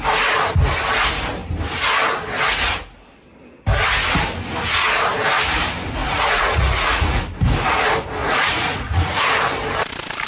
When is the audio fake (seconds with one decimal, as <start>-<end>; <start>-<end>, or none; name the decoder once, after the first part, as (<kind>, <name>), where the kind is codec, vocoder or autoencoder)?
6.0-7.2 (vocoder, Vocos); 8.2-9.2